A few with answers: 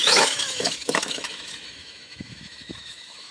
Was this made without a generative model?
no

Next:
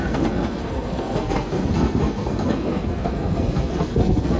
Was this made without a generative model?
no